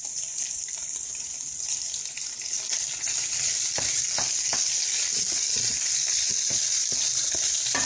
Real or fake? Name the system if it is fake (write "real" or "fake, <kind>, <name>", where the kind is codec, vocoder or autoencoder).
real